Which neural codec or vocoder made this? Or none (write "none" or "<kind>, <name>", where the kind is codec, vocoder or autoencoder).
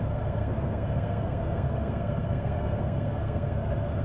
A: codec, SNAC